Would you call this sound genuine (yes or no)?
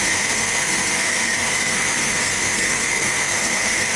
no